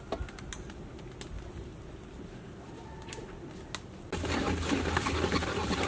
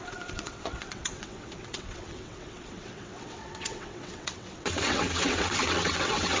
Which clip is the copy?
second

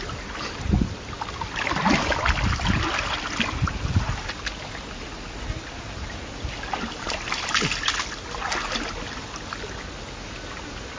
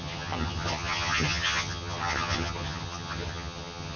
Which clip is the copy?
second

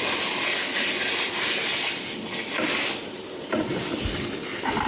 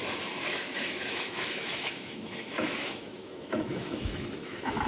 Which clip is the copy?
second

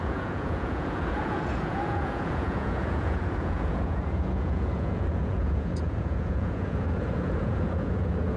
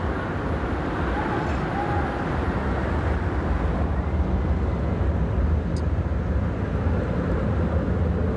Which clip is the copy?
first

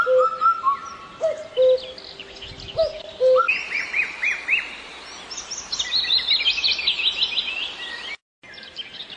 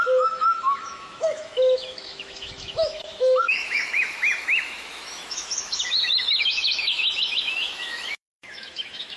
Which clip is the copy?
second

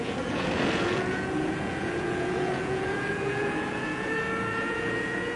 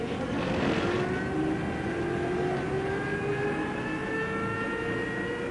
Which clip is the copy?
first